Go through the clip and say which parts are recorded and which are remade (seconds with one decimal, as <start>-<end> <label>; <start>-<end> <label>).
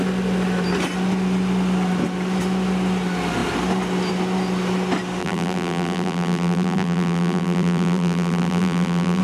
0.0-5.2 recorded; 5.2-9.2 remade